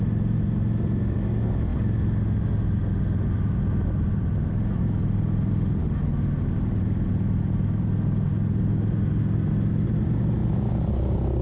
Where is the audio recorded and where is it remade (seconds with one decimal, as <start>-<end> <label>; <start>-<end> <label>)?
0.0-11.4 recorded